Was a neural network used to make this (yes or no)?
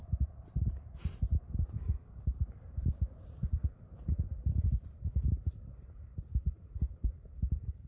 yes